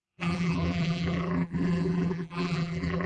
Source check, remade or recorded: remade